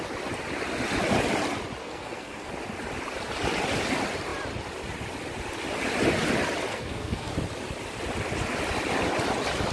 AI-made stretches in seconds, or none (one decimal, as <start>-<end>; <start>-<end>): 1.8-2.5; 6.7-7.3